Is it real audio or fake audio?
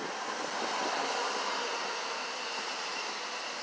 real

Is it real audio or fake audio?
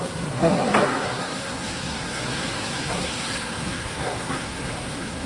fake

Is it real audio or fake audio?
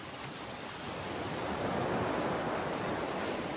real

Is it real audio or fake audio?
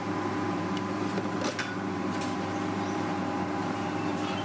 fake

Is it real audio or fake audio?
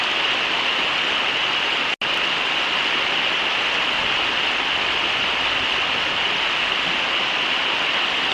real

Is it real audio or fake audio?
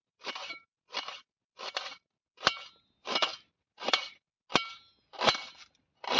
real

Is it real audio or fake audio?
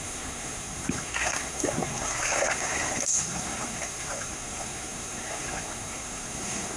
fake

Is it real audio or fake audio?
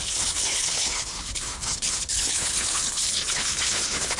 fake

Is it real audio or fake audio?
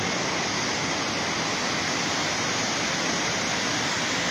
fake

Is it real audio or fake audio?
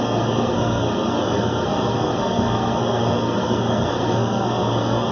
fake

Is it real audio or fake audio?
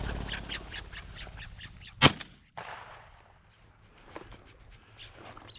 real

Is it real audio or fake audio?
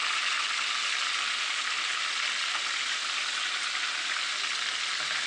real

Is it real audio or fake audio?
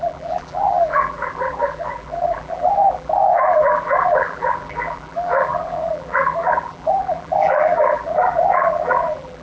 fake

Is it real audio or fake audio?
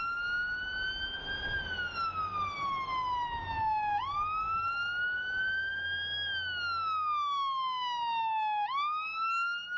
real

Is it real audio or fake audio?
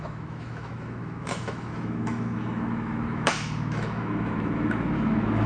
fake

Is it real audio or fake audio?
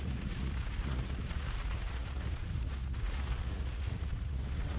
fake